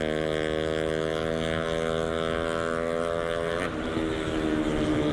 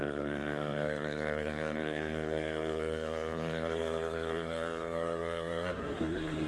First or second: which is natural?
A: first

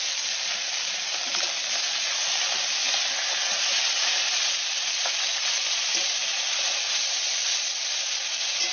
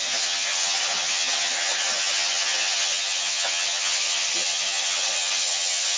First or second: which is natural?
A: first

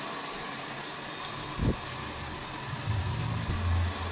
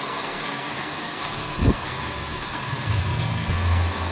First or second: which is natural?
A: first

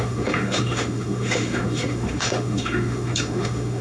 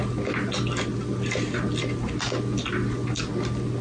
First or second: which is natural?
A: second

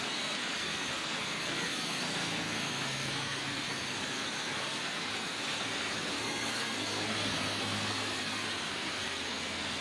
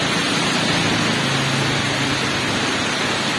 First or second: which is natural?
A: second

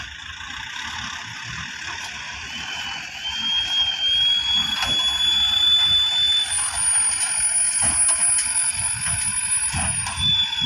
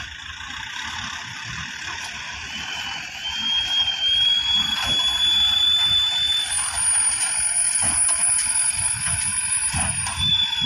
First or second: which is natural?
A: first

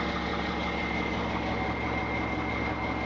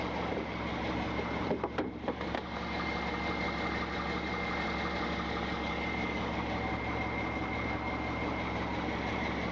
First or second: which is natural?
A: first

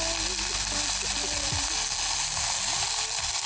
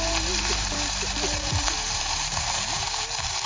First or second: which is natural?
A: first